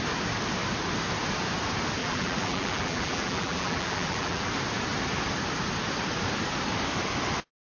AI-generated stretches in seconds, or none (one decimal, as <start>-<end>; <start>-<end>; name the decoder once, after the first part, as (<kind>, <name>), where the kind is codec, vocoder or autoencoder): 2.0-4.5 (vocoder, BigVGAN v2)